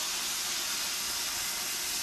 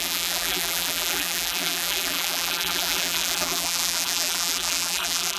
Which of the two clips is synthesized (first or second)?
second